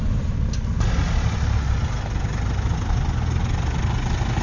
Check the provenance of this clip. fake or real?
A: real